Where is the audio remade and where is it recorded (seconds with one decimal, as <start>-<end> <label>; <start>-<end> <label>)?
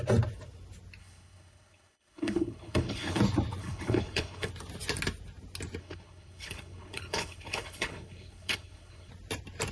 0.0-1.0 recorded; 1.0-3.2 remade; 3.2-3.6 recorded; 3.6-4.5 remade; 4.5-5.8 recorded; 5.8-9.1 remade; 9.1-9.7 recorded